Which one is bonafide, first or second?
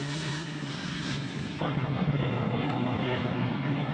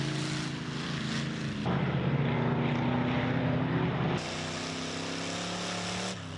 second